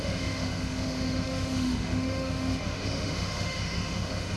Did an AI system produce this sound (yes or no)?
yes